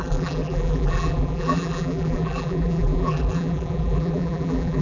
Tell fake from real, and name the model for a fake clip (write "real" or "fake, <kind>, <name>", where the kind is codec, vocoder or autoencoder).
fake, vocoder, BigVGAN v2